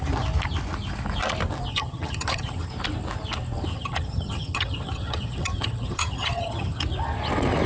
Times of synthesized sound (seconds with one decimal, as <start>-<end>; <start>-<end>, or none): 1.7-2.7; 3.7-6.8